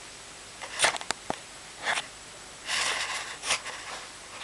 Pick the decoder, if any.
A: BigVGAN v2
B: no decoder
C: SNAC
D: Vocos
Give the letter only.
B